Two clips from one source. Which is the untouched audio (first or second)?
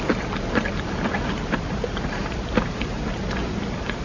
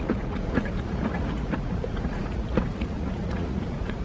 first